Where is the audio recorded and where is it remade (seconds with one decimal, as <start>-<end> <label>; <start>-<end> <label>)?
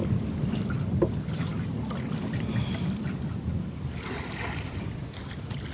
0.0-5.7 recorded